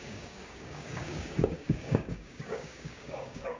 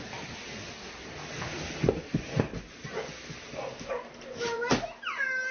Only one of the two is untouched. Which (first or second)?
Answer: second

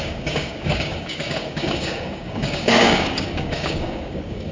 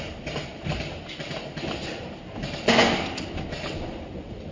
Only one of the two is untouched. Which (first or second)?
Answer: second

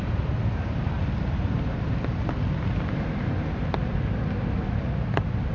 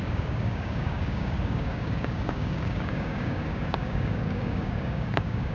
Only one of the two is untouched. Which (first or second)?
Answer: first